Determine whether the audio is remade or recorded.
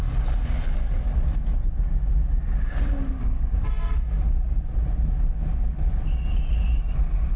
recorded